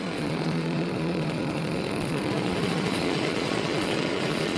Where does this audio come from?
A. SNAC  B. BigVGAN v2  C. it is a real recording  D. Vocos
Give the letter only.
D